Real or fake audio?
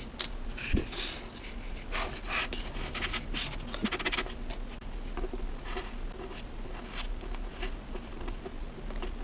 real